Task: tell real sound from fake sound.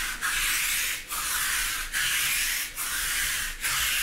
real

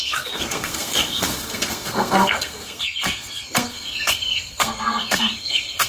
fake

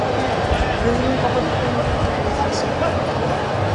real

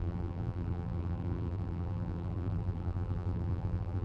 fake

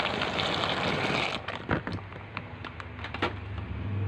real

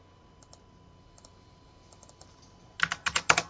real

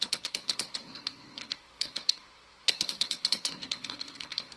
fake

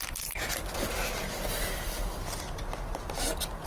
real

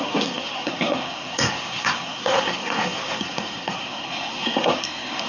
fake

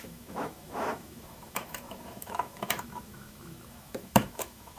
fake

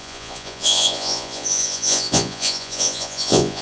fake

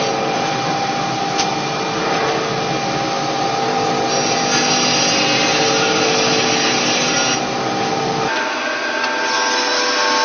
real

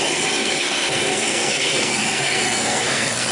fake